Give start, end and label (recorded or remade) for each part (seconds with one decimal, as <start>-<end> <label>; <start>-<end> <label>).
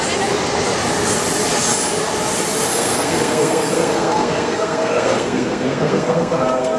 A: 0.0-2.7 recorded; 2.7-6.8 remade